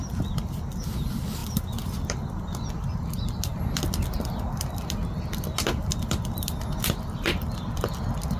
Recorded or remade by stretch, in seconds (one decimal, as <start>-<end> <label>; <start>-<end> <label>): 0.0-8.4 recorded